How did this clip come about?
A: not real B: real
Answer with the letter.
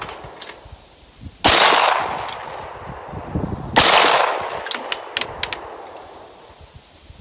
B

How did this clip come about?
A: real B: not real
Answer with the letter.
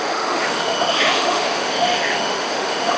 B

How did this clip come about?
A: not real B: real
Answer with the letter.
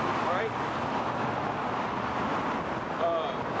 B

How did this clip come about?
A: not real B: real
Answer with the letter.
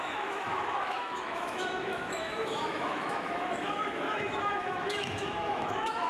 A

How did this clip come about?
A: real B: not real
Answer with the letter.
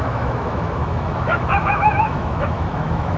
B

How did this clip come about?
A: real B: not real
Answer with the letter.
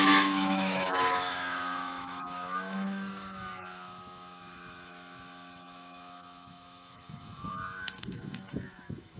B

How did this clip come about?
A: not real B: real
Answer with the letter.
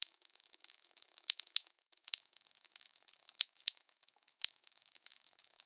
A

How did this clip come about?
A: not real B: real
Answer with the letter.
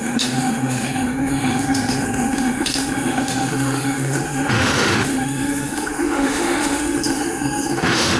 A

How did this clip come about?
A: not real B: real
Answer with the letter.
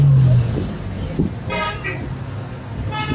B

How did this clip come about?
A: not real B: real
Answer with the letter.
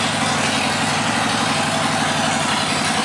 B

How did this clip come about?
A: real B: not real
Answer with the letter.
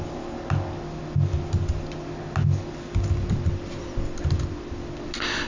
A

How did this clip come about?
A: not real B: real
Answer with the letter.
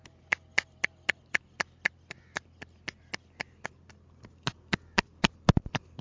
B